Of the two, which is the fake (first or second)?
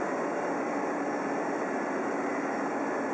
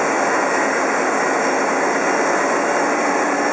first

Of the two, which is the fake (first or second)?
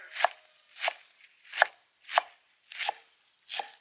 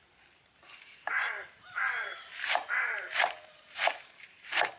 second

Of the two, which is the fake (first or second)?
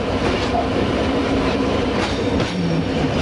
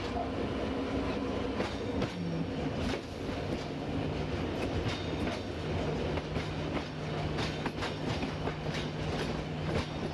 first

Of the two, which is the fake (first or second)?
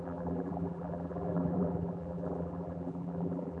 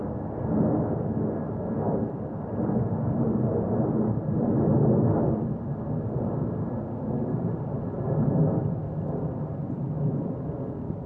first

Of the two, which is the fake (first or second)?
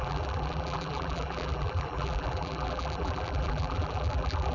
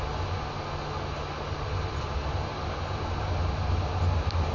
first